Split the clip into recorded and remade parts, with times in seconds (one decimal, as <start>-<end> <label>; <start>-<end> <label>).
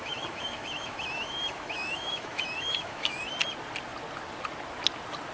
0.0-3.2 remade; 3.2-5.3 recorded